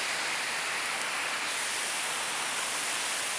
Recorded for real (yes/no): yes